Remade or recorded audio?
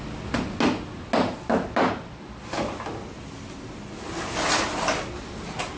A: recorded